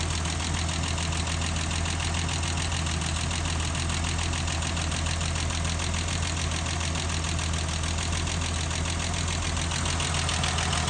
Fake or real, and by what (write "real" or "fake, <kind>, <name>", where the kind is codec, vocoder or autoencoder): real